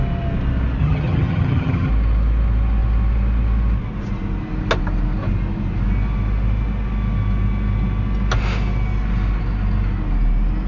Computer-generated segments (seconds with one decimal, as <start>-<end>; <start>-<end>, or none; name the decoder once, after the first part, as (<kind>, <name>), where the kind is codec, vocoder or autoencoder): 0.8-1.9 (vocoder, HiFi-GAN)